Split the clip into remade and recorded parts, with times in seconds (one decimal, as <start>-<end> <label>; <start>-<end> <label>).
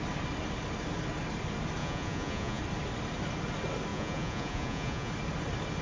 0.0-1.8 recorded; 1.8-2.6 remade; 2.6-3.9 recorded; 3.9-5.1 remade; 5.1-5.8 recorded